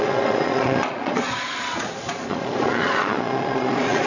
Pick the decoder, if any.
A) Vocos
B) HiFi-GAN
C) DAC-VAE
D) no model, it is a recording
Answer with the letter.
A